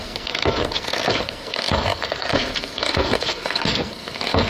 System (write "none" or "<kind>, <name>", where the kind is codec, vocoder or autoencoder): codec, SNAC